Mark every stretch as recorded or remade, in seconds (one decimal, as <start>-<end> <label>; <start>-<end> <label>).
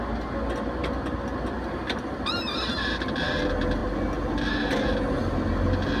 0.0-6.0 recorded